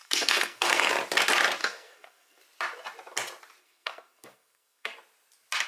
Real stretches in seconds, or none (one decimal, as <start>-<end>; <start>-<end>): 0.9-1.6; 2.4-3.6; 4.9-5.7